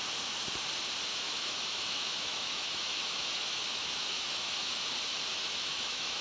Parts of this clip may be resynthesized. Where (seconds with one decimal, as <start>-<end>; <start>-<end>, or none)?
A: 1.1-4.8; 5.3-6.2